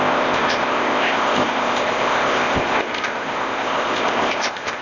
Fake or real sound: fake